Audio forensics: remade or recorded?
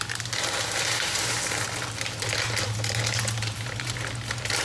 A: recorded